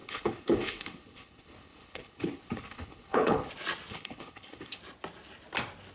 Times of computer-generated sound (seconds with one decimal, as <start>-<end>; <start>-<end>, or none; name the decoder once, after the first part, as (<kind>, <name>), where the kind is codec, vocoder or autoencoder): 0.0-3.5 (codec, HILCodec); 3.9-4.8